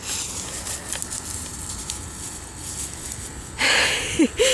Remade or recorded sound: recorded